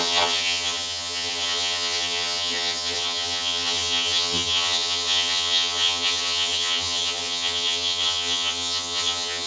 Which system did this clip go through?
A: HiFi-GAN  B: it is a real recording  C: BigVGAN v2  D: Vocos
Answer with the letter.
A